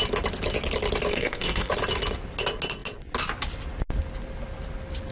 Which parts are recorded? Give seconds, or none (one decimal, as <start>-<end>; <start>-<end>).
0.0-1.1; 1.7-5.1